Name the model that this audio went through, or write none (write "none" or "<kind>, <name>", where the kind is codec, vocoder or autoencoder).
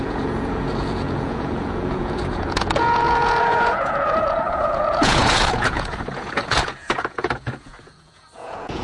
vocoder, Vocos